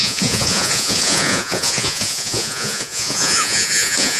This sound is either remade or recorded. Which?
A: remade